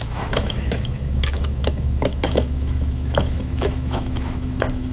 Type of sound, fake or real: fake